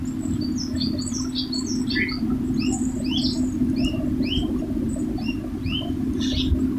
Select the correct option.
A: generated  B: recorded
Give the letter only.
B